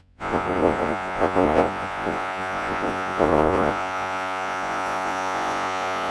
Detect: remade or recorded remade